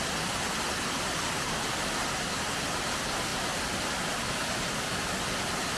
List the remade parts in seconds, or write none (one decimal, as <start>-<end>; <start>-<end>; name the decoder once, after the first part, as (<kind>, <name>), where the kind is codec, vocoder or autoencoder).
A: none